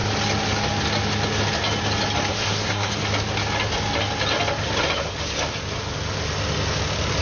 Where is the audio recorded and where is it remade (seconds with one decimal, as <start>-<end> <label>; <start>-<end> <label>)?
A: 0.0-2.3 recorded; 2.3-2.9 remade; 2.9-7.2 recorded